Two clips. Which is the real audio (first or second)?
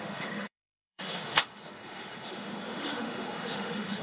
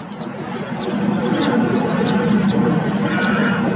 second